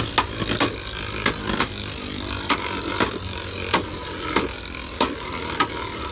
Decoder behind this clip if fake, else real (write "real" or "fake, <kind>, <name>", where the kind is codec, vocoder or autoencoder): real